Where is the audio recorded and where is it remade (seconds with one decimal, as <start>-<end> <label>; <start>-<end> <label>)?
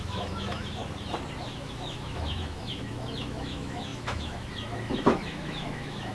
0.0-0.8 remade; 0.8-1.5 recorded; 1.5-6.1 remade